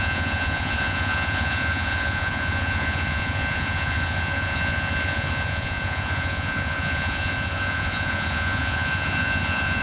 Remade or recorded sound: remade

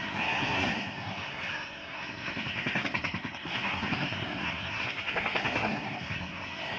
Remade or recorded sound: remade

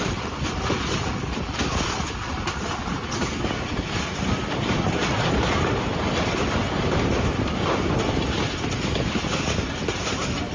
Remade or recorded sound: recorded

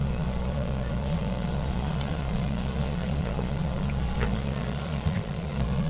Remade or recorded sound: remade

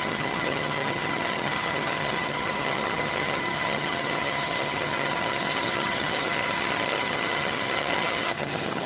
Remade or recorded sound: remade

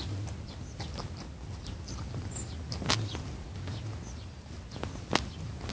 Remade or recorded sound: recorded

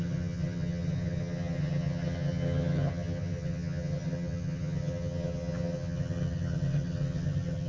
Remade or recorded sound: remade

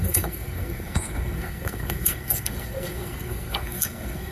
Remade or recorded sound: remade